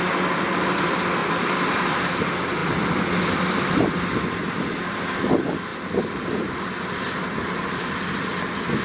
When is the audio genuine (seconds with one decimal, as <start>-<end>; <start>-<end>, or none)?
0.0-1.2; 1.8-2.6; 5.2-8.8